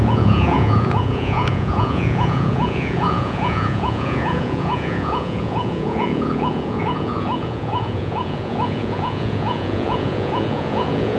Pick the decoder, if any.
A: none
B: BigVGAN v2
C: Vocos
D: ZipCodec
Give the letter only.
C